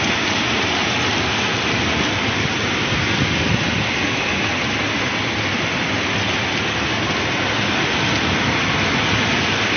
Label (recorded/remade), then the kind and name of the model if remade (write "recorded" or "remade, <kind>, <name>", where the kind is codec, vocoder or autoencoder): recorded